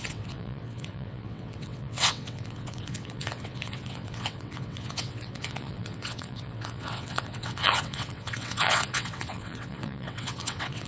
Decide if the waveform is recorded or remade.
remade